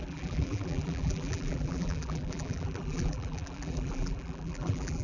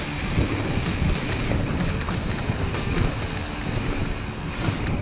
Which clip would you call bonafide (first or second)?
second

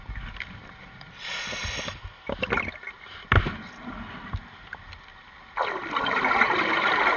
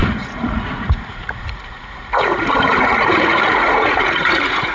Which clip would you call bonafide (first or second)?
first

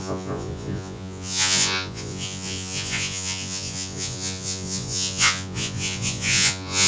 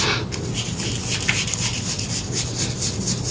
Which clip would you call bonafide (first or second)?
second